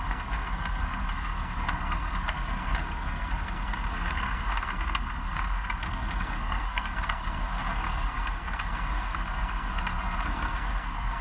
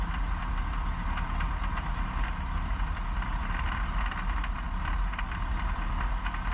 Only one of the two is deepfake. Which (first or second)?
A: first